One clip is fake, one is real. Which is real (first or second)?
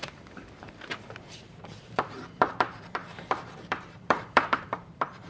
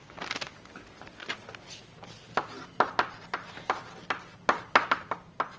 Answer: second